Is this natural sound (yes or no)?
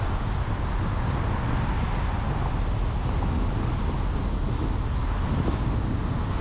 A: yes